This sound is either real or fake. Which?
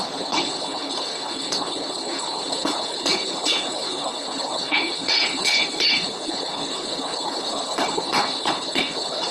fake